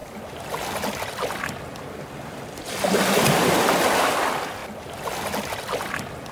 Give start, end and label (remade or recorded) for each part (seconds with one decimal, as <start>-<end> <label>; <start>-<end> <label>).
0.0-6.3 recorded